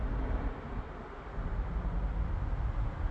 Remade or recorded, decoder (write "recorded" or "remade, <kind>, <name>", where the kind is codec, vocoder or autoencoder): recorded